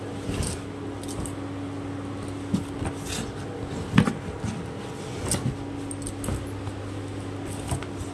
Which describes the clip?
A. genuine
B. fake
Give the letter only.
A